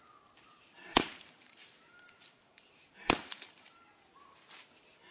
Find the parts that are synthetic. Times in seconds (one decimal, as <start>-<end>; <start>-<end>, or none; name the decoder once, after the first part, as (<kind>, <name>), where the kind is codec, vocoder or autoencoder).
0.8-3.9 (vocoder, BigVGAN v2)